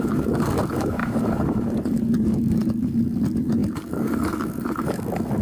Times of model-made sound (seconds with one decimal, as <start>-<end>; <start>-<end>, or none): 0.0-5.4

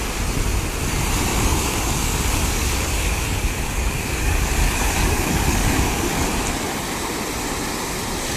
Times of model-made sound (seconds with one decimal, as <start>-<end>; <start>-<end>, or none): 1.3-6.3

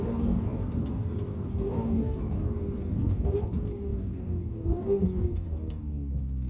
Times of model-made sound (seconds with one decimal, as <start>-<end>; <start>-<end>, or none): 0.0-6.5

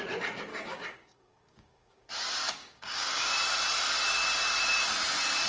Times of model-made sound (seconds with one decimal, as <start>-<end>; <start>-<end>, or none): 0.5-2.1; 2.6-3.3

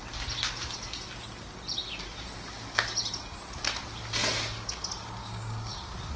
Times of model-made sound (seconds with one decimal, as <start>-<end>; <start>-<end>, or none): 5.2-5.8

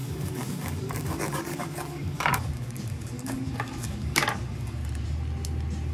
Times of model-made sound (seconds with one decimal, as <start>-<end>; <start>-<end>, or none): 0.0-4.8